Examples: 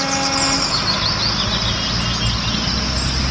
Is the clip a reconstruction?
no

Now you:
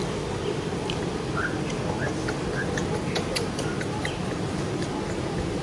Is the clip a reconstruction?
no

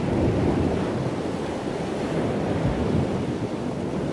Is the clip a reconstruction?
no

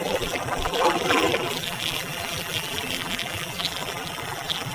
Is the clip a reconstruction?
yes